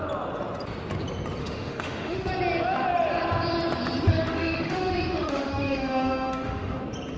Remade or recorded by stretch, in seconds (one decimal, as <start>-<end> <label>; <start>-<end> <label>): 0.0-1.4 recorded; 1.4-2.3 remade; 2.3-4.1 recorded; 4.1-6.8 remade; 6.8-7.2 recorded